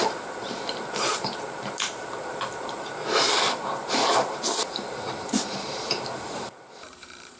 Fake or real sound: fake